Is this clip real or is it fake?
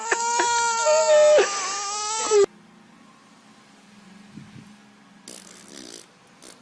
real